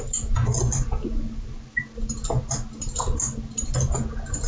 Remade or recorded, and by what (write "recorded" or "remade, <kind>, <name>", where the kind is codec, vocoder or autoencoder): recorded